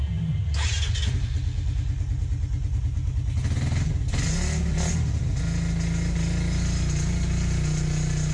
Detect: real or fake real